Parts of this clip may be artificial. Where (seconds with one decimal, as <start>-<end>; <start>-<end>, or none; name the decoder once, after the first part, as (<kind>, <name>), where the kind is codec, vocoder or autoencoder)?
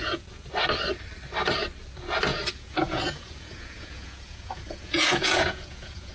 0.0-0.5 (vocoder, Vocos); 2.3-6.1